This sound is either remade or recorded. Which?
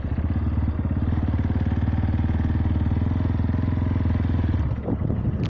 recorded